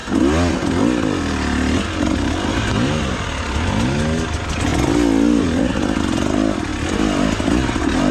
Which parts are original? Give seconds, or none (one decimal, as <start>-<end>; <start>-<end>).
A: 0.0-8.1